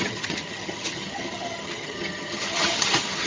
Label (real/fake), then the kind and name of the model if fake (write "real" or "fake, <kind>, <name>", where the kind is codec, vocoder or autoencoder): fake, vocoder, HiFi-GAN